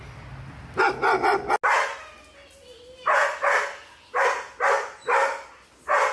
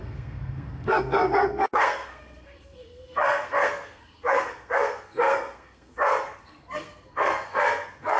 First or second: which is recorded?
first